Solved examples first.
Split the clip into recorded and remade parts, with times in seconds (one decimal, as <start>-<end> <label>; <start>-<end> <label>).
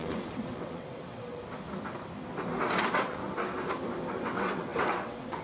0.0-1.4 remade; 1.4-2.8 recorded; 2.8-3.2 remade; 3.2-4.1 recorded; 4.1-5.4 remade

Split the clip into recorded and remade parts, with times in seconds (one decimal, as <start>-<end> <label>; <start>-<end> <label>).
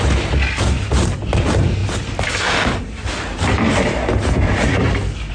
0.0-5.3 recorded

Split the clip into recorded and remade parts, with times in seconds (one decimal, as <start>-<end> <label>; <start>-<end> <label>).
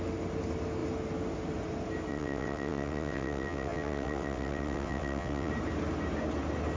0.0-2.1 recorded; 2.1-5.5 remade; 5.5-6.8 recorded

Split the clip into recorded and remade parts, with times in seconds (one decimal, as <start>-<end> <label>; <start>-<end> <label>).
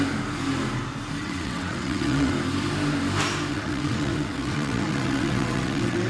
0.0-1.2 recorded; 1.2-2.3 remade; 2.3-3.5 recorded; 3.5-6.1 remade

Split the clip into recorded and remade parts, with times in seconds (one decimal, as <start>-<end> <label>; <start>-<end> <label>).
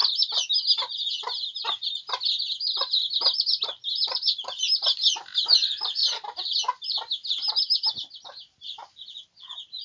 0.0-9.8 recorded